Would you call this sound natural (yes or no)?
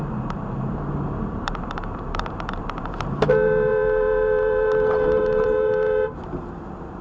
no